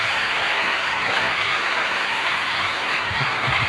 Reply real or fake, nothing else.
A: fake